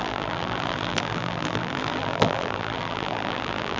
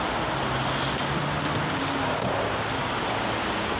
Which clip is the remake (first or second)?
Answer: first